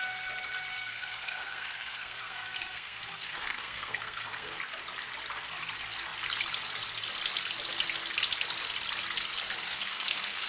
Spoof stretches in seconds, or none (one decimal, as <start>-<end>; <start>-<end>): 0.7-4.6; 9.7-10.5